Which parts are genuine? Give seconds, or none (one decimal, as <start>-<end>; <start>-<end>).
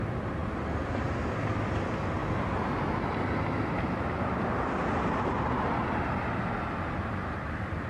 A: 0.0-7.9